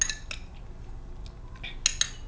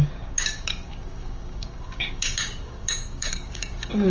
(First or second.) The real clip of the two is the first